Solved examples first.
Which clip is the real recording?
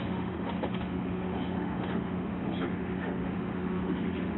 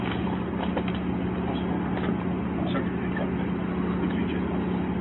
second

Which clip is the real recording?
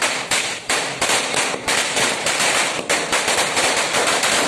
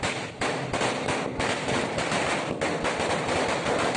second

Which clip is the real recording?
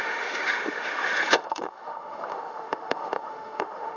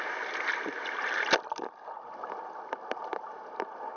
second